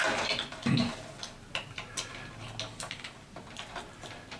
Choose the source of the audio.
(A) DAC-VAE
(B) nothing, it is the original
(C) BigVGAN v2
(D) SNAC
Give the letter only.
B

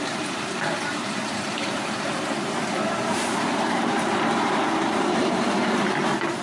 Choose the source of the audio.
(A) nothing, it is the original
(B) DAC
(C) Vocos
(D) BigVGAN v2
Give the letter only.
D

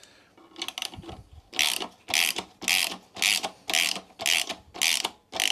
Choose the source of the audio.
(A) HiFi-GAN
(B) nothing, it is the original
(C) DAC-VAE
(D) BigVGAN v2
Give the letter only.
B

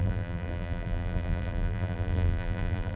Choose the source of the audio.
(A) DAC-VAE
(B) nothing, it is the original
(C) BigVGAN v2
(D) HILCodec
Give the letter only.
C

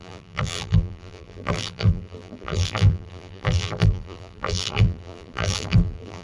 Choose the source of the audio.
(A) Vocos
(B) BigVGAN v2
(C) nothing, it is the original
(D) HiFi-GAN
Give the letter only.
B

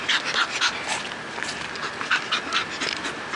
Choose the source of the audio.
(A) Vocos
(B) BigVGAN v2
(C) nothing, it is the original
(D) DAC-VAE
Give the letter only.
C